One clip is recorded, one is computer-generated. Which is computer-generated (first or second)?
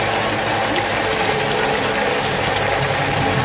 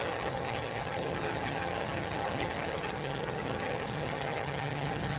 second